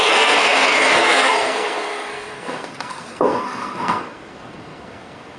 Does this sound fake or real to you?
fake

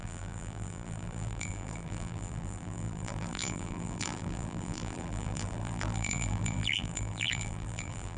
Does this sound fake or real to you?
fake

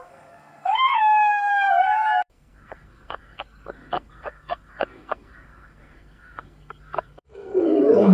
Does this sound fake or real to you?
fake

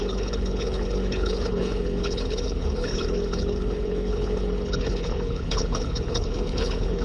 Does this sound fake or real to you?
fake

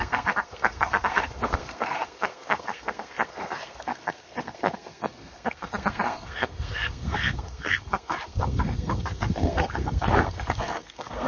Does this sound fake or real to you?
fake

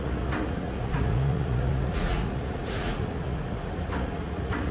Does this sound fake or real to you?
fake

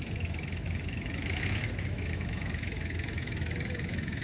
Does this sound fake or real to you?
fake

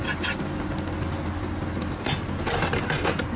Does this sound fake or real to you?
real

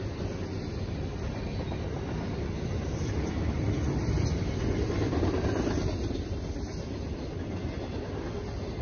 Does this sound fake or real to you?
real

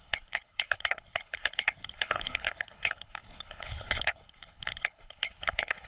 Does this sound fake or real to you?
fake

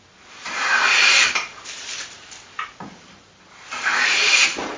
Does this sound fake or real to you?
fake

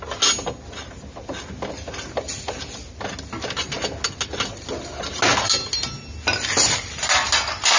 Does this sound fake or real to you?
real